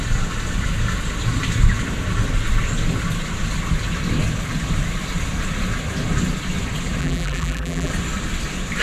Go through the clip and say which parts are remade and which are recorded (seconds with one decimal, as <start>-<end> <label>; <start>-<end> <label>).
0.0-7.0 recorded; 7.0-7.9 remade; 7.9-8.8 recorded